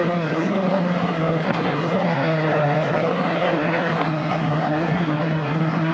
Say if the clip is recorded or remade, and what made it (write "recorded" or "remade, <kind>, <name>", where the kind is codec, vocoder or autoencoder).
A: remade, codec, SNAC